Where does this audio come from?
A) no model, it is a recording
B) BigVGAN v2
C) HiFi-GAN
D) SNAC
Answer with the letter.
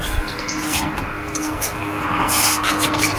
D